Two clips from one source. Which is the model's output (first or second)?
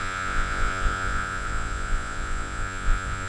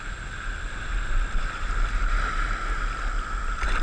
first